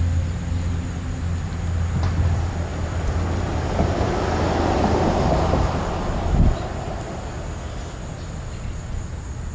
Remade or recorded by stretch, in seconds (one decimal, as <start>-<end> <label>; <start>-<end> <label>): 0.0-9.5 recorded